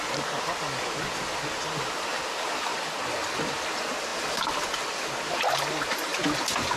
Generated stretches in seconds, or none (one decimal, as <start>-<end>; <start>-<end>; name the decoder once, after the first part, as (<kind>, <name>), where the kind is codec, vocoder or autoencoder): 4.1-5.0 (vocoder, BigVGAN v2)